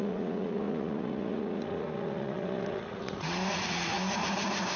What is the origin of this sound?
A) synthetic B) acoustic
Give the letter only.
A